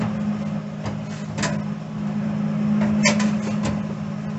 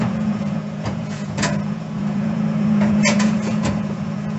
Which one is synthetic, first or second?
second